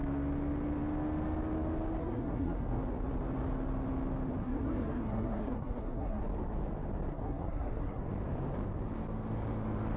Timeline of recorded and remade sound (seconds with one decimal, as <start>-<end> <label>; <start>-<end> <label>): 0.0-2.0 recorded; 2.0-2.8 remade; 2.8-4.4 recorded; 4.4-6.2 remade; 6.2-7.1 recorded; 7.1-8.0 remade; 8.0-10.0 recorded